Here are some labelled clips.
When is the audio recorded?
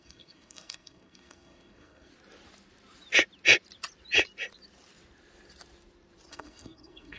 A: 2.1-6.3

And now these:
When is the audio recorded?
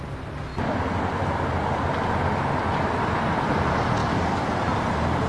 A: 0.0-5.3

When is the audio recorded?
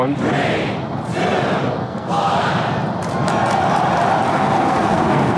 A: 0.0-1.8; 2.5-4.3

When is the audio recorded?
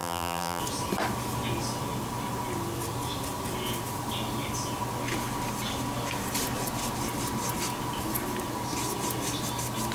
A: 0.6-9.9